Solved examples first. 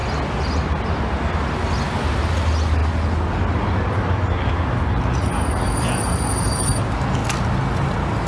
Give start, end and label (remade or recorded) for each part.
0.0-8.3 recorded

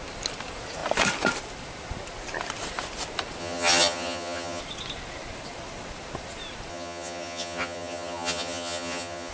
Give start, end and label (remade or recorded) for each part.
0.0-3.4 recorded; 3.4-4.6 remade; 4.6-6.7 recorded; 6.7-9.3 remade

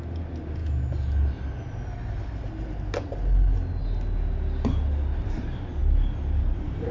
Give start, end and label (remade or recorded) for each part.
0.0-6.9 recorded

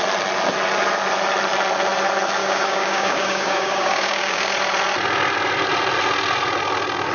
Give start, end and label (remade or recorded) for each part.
0.0-2.4 recorded; 2.4-4.5 remade; 4.5-7.1 recorded

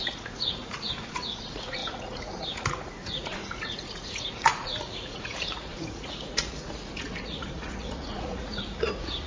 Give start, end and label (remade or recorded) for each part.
0.0-9.3 remade

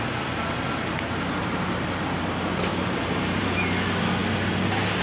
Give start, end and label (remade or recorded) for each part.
0.0-2.7 recorded; 2.7-3.4 remade; 3.4-5.0 recorded

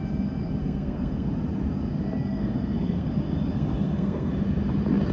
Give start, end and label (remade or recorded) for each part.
0.0-0.6 recorded; 0.6-1.3 remade; 1.3-2.2 recorded; 2.2-3.1 remade; 3.1-3.5 recorded; 3.5-4.3 remade; 4.3-5.1 recorded

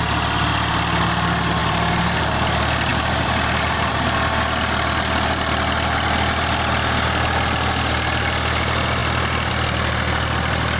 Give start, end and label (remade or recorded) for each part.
0.0-1.6 recorded; 1.6-2.2 remade; 2.2-2.9 recorded; 2.9-3.9 remade; 3.9-10.8 recorded